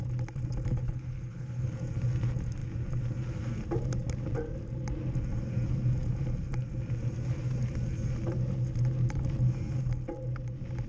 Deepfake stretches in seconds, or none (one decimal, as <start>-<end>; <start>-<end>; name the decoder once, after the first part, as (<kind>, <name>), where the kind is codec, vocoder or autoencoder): 0.7-1.7 (codec, HILCodec)